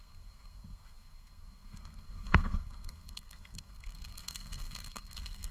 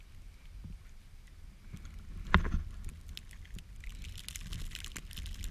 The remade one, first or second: first